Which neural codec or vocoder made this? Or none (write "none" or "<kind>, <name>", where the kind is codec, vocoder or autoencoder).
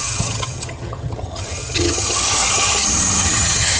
vocoder, HiFi-GAN